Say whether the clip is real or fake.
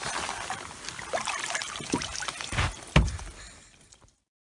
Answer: real